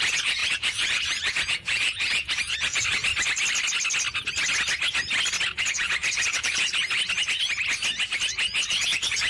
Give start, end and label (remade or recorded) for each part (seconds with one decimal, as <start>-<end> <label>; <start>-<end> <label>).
0.0-3.1 remade; 3.1-5.6 recorded; 5.6-6.8 remade; 6.8-8.7 recorded; 8.7-9.3 remade